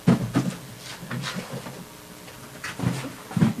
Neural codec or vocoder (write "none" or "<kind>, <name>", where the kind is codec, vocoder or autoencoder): none